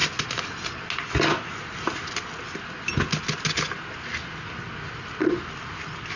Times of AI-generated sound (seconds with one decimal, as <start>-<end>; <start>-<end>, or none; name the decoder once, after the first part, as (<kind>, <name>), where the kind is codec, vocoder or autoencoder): none